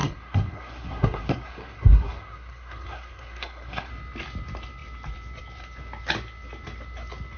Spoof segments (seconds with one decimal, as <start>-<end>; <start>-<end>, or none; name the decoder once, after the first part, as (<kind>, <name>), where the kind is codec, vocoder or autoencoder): 0.0-3.9 (codec, SNAC)